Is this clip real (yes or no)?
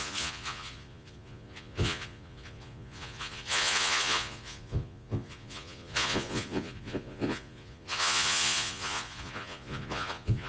no